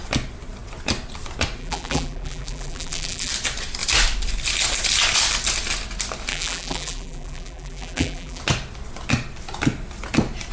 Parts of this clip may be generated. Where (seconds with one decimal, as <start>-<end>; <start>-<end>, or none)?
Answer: 1.6-3.3; 6.3-8.4